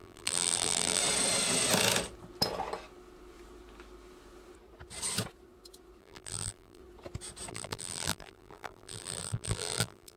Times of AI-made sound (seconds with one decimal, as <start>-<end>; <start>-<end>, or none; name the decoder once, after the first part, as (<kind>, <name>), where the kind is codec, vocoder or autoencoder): 0.0-1.0 (vocoder, BigVGAN v2); 6.0-6.8; 7.5-10.2

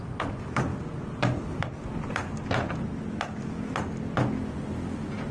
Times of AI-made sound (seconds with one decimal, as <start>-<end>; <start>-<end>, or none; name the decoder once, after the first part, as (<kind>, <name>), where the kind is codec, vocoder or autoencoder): none

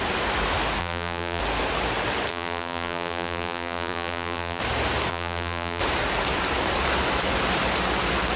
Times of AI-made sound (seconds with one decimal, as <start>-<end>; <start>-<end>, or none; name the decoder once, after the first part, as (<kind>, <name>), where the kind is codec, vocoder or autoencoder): 0.8-1.4 (vocoder, BigVGAN v2); 2.3-4.6; 5.1-5.8

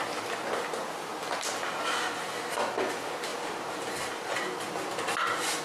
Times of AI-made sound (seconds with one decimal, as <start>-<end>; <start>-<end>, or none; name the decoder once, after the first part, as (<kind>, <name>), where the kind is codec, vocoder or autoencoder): 3.3-4.4 (vocoder, BigVGAN v2)

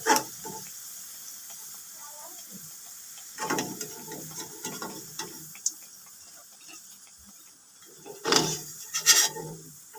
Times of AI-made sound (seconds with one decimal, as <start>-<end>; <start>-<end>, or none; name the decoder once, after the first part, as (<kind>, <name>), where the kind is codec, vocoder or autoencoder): 0.0-1.1 (vocoder, BigVGAN v2); 1.8-10.0

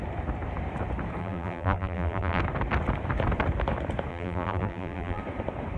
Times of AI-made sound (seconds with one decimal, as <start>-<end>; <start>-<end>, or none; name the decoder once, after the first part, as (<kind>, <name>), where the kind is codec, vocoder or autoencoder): 1.2-2.4 (vocoder, BigVGAN v2); 4.1-5.2

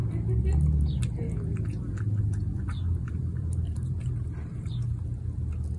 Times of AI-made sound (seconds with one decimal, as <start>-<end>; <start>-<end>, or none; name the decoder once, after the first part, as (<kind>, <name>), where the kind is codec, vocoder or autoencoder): 3.0-4.7 (vocoder, BigVGAN v2)

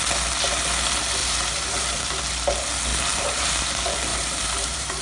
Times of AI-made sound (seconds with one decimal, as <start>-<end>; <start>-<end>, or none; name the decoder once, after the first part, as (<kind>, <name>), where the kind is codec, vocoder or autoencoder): 1.2-2.2 (vocoder, BigVGAN v2); 2.9-3.6; 4.1-5.0